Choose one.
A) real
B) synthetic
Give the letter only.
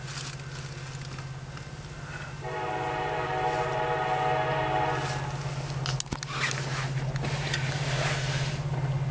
A